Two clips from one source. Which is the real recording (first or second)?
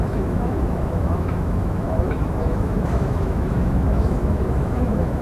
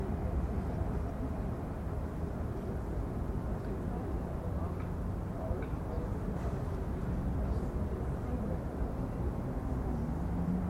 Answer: second